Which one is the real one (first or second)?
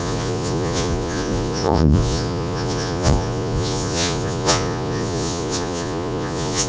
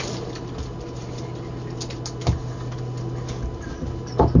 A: second